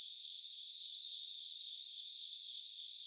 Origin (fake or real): fake